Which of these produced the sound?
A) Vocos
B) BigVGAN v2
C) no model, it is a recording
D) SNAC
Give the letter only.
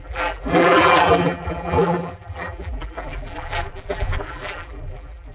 B